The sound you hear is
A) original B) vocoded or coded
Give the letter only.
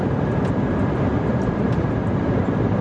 A